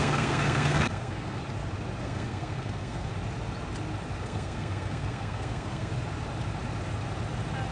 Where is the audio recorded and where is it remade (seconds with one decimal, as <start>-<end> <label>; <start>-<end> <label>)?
0.0-1.4 remade; 1.4-2.0 recorded; 2.0-3.1 remade; 3.1-4.2 recorded; 4.2-5.9 remade; 5.9-7.7 recorded